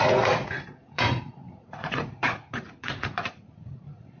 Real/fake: fake